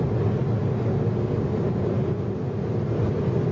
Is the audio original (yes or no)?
yes